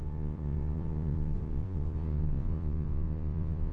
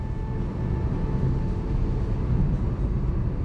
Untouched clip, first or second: second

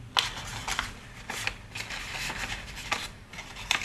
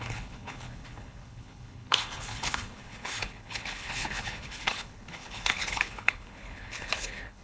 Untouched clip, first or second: first